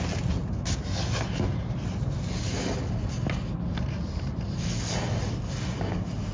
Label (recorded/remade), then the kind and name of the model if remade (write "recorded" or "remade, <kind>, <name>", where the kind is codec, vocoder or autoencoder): recorded